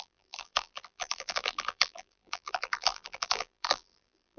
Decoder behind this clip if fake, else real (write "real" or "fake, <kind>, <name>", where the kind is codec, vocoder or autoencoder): fake, vocoder, BigVGAN v2